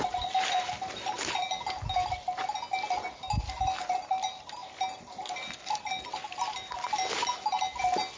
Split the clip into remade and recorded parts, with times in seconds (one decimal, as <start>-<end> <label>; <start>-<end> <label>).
0.0-8.2 recorded

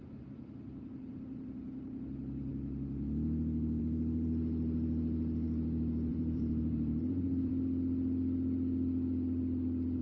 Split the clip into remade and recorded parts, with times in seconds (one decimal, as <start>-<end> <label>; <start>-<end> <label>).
0.0-6.1 recorded; 6.1-7.5 remade; 7.5-10.0 recorded

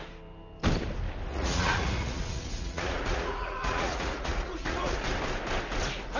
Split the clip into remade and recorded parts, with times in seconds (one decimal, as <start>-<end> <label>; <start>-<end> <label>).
0.0-1.3 recorded; 1.3-5.0 remade; 5.0-6.2 recorded